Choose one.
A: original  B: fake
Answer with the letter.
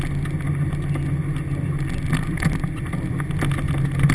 A